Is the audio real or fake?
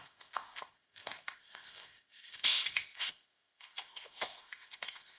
fake